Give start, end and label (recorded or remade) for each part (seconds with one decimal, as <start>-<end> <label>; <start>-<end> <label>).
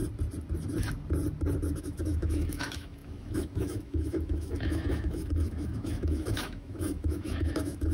0.0-1.8 recorded; 1.8-7.9 remade